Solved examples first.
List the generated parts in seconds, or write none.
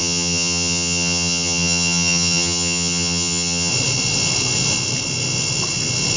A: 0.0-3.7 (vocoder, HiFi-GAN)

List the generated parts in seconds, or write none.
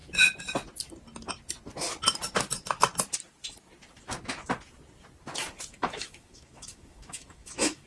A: 5.7-7.9 (autoencoder, DAC-VAE)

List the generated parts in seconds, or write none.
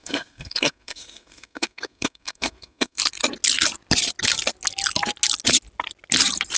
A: 0.0-3.0 (codec, SNAC)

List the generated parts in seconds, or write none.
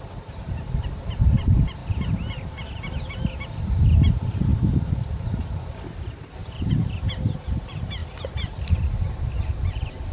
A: 0.0-1.8 (vocoder, BigVGAN v2); 3.6-10.1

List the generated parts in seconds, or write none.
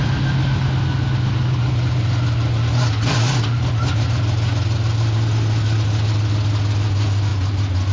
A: none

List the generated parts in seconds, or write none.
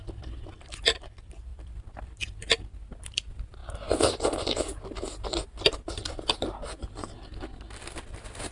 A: none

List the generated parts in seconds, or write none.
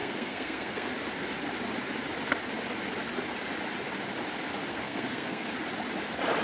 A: 0.0-0.9 (codec, SNAC); 4.7-5.5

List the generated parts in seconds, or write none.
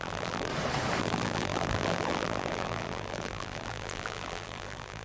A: 0.0-0.5 (vocoder, BigVGAN v2); 1.0-5.0